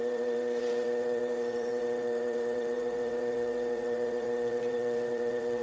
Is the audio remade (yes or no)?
yes